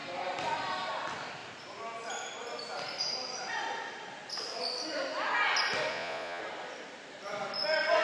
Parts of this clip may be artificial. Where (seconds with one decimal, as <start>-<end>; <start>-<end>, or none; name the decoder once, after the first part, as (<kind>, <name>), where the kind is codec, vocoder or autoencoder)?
5.9-6.4 (vocoder, Vocos)